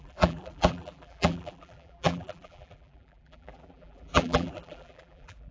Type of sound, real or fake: fake